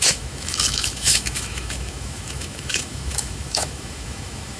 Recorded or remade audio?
remade